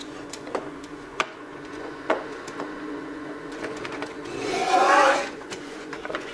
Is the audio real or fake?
fake